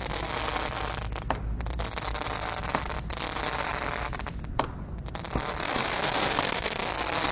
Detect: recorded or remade recorded